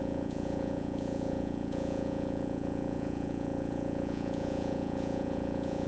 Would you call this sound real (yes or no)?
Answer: no